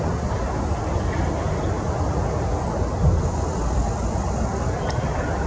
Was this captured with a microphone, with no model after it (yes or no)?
yes